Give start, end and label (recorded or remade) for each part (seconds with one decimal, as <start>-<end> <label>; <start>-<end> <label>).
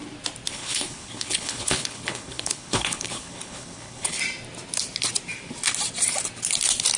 0.0-0.5 recorded; 0.5-4.2 remade; 4.2-7.0 recorded